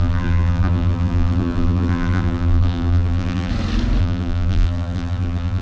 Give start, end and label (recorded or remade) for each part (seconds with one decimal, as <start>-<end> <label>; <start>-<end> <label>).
0.0-3.5 remade; 3.5-4.0 recorded; 4.0-5.6 remade